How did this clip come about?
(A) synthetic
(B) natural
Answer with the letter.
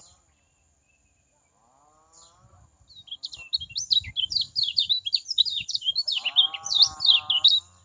B